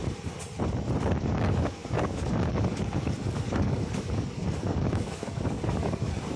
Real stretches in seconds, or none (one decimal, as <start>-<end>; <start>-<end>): 0.0-1.2